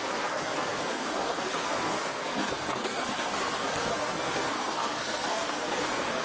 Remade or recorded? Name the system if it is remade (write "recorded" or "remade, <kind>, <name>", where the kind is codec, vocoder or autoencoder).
remade, codec, SNAC